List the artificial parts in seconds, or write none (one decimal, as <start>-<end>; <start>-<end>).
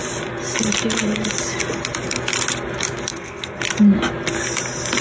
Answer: 3.1-3.6